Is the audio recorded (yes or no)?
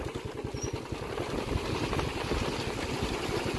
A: yes